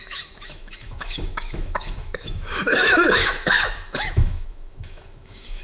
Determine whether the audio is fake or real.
fake